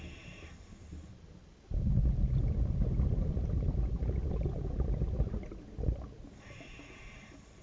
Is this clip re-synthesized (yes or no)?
no